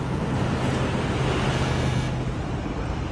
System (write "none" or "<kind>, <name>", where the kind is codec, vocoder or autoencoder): none